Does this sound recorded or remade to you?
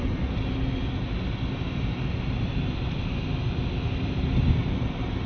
recorded